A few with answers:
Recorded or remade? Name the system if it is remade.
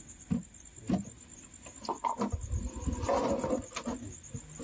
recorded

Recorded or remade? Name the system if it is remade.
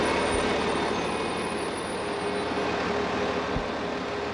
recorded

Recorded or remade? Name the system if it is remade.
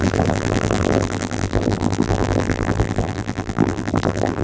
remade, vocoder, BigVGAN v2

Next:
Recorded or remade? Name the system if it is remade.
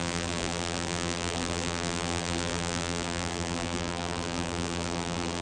remade, vocoder, BigVGAN v2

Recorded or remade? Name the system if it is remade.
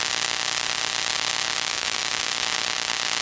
recorded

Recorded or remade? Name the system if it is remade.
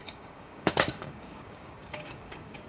remade, codec, DAC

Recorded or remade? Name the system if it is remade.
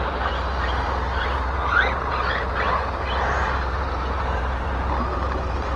remade, vocoder, BigVGAN v2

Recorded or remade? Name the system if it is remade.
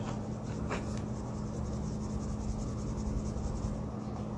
recorded